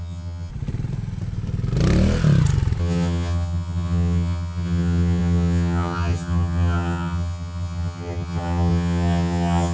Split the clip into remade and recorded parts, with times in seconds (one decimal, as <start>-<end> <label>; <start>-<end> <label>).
0.0-0.5 remade; 0.5-2.8 recorded; 2.8-9.7 remade

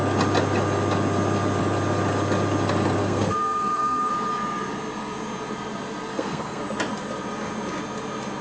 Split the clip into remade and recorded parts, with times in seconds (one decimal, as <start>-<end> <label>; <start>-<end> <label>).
0.0-3.0 recorded; 3.0-4.1 remade; 4.1-6.1 recorded; 6.1-6.6 remade; 6.6-8.4 recorded

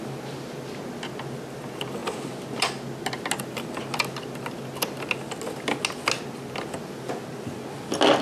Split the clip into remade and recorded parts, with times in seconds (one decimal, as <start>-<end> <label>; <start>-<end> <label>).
0.0-8.2 recorded